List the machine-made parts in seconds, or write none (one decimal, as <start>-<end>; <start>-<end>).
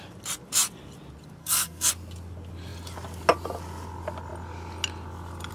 1.4-1.9